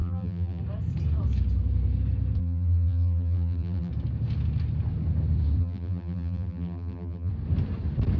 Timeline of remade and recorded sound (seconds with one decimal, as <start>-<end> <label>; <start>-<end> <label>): 0.0-0.6 remade; 0.6-2.4 recorded; 2.4-3.9 remade; 3.9-5.6 recorded; 5.6-7.3 remade; 7.3-8.2 recorded